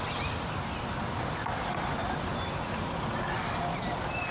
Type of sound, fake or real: real